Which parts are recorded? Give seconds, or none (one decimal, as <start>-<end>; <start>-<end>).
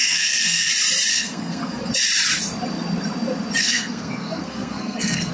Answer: 0.7-1.1; 1.9-3.6